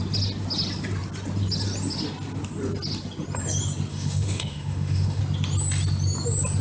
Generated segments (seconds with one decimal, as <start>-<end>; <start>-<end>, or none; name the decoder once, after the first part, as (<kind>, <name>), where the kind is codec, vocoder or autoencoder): 3.9-5.2 (autoencoder, DAC-VAE)